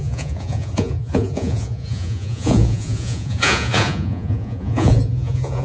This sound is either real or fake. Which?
fake